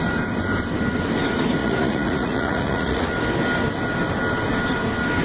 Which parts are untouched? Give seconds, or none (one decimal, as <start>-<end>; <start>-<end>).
0.0-1.6; 3.1-5.2